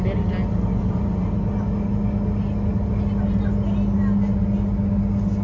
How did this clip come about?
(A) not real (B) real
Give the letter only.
B